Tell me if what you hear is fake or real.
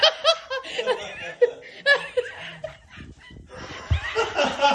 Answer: real